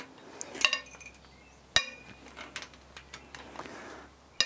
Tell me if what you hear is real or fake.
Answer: real